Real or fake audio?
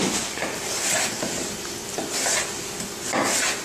real